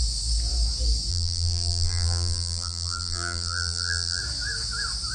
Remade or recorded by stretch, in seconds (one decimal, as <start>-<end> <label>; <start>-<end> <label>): 0.0-1.1 recorded; 1.1-4.2 remade; 4.2-5.1 recorded